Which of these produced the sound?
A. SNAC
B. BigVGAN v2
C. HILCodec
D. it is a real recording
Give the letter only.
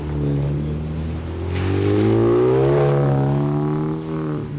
D